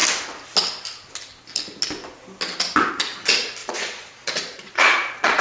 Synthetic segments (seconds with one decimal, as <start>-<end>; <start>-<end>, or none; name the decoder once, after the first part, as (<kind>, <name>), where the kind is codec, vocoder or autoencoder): 3.6-5.4 (vocoder, Vocos)